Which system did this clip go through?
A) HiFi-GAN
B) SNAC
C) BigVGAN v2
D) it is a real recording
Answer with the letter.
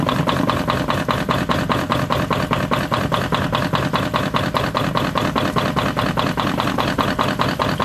D